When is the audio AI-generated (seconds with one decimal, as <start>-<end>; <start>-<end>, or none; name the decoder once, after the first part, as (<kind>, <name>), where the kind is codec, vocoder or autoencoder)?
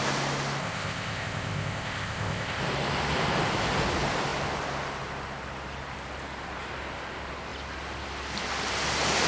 0.6-2.6 (codec, ZipCodec)